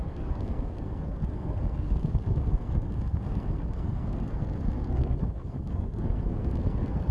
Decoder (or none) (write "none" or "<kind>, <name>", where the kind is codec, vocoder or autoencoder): codec, SNAC